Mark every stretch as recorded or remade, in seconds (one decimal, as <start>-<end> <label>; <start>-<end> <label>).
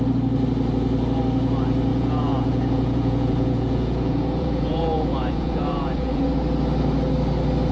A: 0.0-1.9 recorded; 1.9-6.2 remade; 6.2-7.7 recorded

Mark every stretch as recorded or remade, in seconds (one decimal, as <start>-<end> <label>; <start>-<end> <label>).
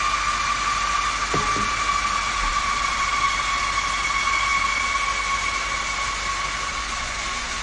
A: 0.0-6.7 recorded; 6.7-7.6 remade